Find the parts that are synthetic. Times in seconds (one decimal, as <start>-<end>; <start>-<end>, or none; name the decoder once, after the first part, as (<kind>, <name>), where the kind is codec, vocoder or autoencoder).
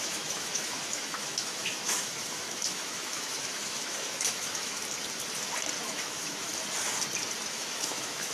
0.0-4.8 (autoencoder, DAC-VAE); 5.8-6.5; 7.5-8.3